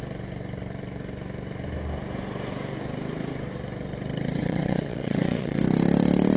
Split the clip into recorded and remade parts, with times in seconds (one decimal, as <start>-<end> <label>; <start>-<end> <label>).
0.0-4.4 recorded; 4.4-5.6 remade; 5.6-6.4 recorded